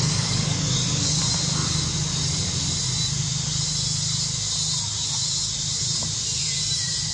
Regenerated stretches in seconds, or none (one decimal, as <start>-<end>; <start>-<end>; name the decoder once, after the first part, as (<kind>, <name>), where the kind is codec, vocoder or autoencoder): 0.0-1.2 (codec, DAC)